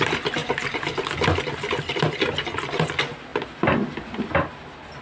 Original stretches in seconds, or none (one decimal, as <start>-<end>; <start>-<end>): 0.0-5.0